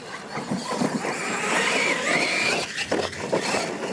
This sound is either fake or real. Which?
real